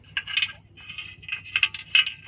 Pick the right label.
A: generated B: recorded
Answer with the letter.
B